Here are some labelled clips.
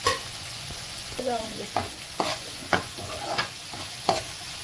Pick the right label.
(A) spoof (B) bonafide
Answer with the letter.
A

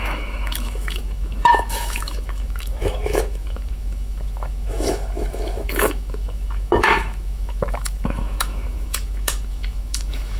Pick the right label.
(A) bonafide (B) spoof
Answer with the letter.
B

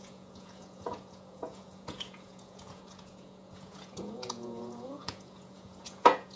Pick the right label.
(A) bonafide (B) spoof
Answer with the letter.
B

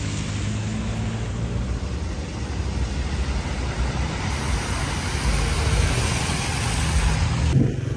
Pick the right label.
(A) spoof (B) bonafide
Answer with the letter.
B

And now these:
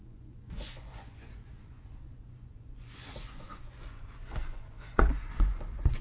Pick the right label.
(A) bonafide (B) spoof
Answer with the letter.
B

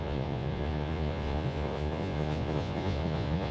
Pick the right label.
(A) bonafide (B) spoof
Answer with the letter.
B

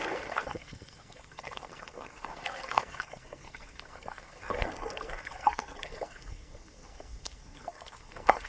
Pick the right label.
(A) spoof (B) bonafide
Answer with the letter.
A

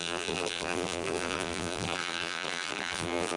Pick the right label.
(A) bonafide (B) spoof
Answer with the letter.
B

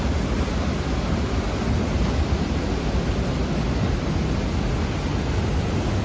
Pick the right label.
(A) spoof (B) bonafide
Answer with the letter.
B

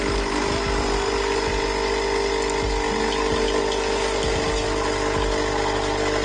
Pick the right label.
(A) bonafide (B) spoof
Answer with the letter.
A